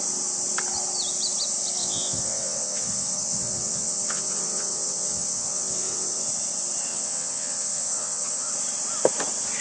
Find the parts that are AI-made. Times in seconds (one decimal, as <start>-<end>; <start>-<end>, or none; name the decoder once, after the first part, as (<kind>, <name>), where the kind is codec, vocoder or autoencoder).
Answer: 1.8-6.3 (vocoder, WaveNeXt); 6.9-8.5